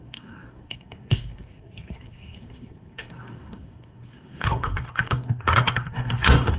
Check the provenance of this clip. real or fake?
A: fake